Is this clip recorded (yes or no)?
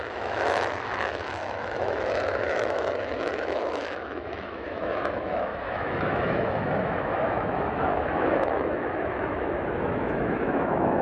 no